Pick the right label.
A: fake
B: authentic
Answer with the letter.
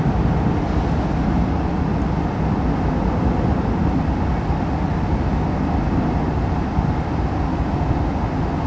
B